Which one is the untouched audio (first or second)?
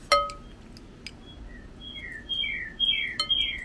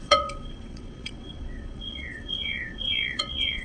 first